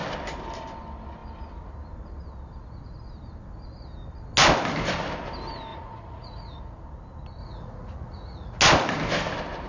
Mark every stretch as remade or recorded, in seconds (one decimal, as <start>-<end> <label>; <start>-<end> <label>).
0.0-5.7 recorded; 5.7-6.6 remade; 6.6-7.4 recorded; 7.4-8.6 remade; 8.6-9.7 recorded